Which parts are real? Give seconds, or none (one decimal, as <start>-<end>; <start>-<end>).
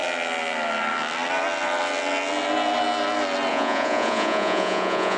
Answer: 0.0-3.5